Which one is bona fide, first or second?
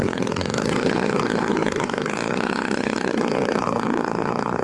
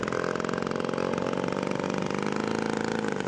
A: second